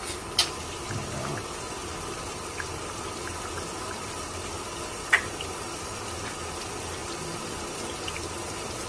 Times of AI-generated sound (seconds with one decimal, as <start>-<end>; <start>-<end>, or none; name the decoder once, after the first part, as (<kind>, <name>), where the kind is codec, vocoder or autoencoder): 1.8-3.2 (vocoder, BigVGAN v2)